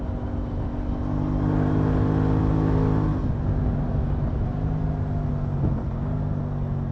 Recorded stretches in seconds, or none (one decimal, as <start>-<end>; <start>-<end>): 0.0-6.9